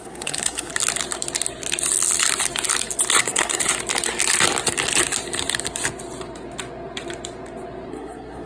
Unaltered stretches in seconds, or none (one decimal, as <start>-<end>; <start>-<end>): 0.7-3.2; 3.6-7.9